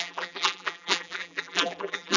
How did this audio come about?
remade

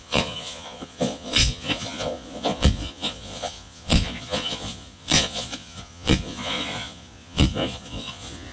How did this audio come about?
remade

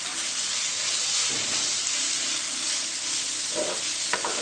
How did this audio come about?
recorded